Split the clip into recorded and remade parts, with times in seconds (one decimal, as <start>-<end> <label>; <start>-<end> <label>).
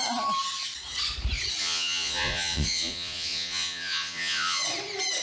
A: 0.0-1.6 recorded; 1.6-4.6 remade; 4.6-5.2 recorded